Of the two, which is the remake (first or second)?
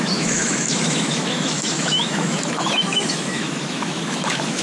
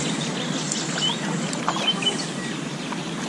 first